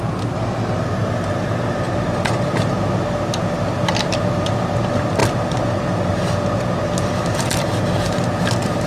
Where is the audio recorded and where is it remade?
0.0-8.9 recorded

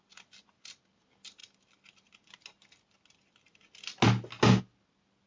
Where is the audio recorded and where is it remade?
0.0-5.3 recorded